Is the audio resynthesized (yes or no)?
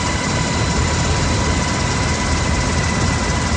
no